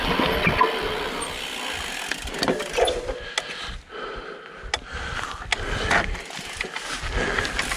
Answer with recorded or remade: recorded